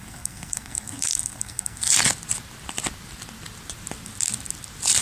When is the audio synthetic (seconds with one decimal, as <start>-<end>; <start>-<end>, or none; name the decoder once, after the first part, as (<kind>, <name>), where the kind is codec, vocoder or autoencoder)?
0.0-1.9 (codec, SNAC)